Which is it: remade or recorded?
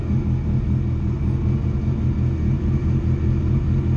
recorded